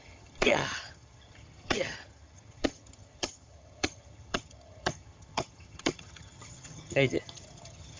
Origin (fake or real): fake